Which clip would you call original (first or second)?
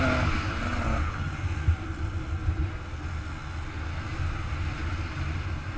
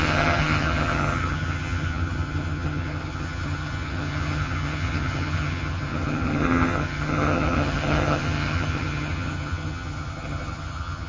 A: first